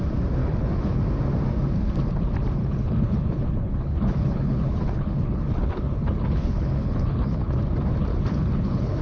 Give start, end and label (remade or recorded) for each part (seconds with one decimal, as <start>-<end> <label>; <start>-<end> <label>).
0.0-0.4 recorded; 0.4-1.0 remade; 1.0-2.6 recorded; 2.6-7.6 remade; 7.6-8.1 recorded; 8.1-9.0 remade